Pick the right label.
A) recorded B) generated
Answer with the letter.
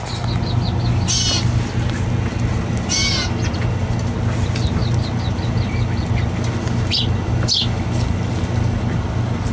A